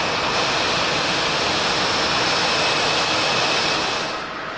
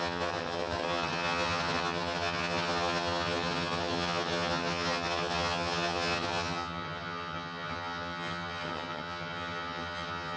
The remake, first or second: second